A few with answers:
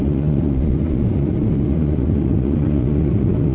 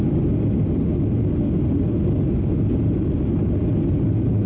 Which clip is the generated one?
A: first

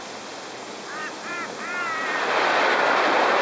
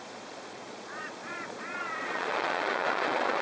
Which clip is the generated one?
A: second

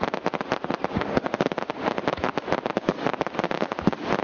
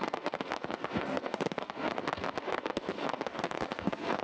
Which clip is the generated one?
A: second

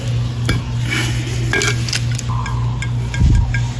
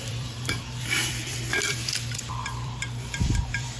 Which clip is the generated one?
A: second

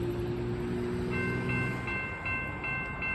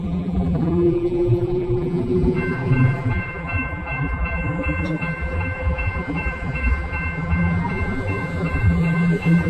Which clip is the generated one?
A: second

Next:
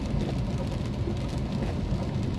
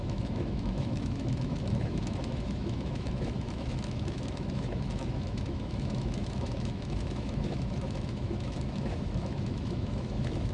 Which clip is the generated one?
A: second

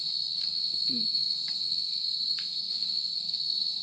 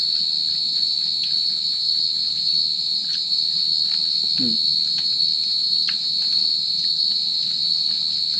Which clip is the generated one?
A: first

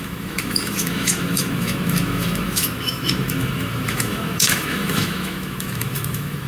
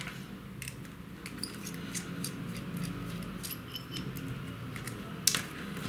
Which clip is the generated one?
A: first